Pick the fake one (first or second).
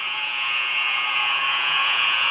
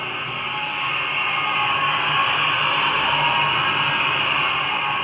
first